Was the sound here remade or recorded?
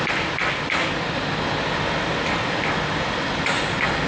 recorded